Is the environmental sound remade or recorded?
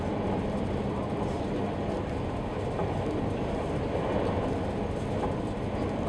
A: recorded